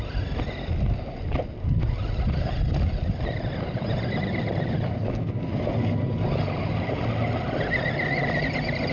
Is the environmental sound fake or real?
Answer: real